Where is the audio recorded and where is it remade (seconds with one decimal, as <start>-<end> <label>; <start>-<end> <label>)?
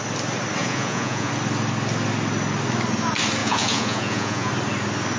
0.0-0.6 recorded; 0.6-1.3 remade; 1.3-3.4 recorded; 3.4-4.5 remade; 4.5-5.2 recorded